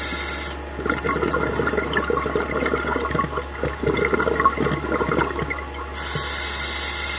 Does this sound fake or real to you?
real